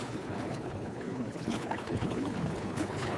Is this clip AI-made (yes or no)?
yes